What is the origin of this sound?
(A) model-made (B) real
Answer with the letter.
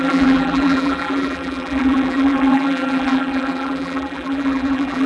A